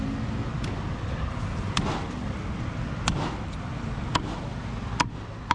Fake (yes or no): no